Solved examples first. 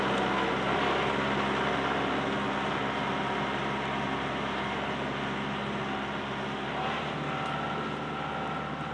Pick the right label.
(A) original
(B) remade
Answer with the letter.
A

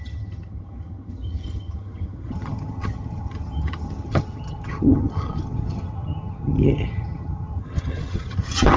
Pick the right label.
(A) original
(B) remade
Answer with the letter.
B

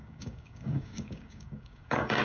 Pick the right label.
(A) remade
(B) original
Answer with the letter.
A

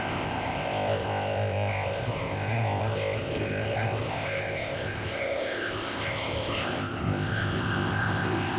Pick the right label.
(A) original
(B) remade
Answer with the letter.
B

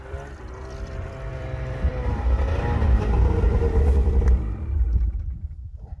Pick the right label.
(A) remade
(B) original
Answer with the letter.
A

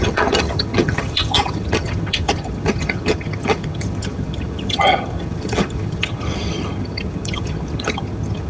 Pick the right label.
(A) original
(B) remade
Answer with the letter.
B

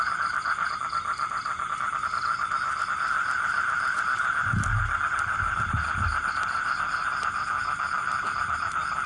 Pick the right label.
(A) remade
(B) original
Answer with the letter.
B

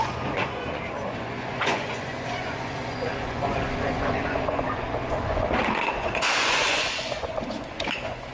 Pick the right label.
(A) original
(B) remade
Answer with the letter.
B